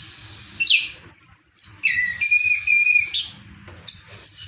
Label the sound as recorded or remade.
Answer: recorded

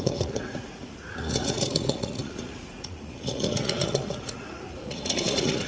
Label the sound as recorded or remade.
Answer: remade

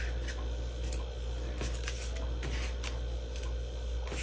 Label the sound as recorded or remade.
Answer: recorded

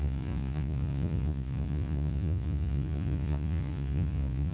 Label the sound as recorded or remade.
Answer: remade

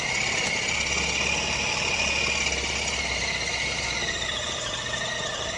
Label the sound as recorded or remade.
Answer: recorded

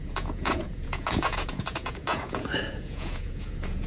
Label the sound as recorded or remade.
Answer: remade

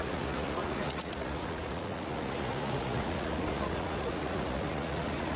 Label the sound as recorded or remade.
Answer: remade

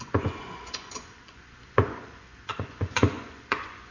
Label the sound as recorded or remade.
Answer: remade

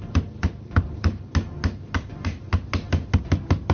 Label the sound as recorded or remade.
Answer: recorded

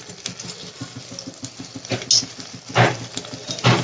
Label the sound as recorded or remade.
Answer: recorded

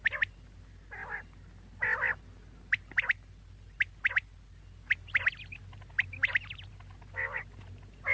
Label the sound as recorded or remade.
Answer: recorded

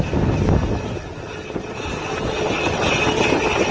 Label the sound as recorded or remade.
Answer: recorded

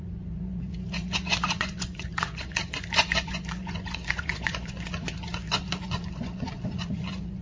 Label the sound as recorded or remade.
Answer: remade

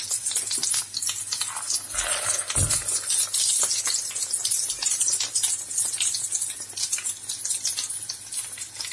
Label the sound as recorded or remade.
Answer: recorded